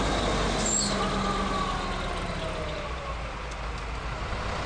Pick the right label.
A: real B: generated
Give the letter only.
A